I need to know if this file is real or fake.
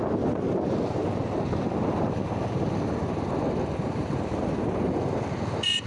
real